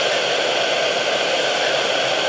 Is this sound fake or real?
real